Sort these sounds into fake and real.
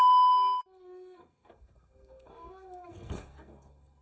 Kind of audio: fake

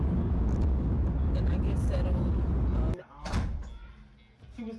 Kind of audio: real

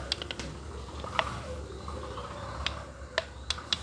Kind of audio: real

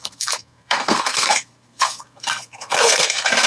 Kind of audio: fake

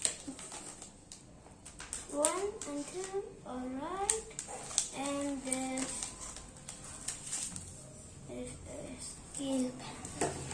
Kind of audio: real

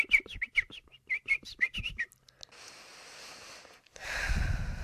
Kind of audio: real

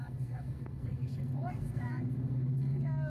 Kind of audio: fake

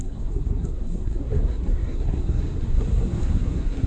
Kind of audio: fake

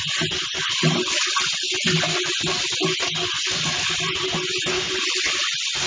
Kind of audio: real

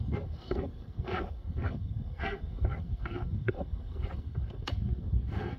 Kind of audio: fake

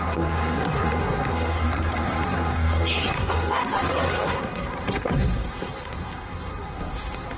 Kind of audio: fake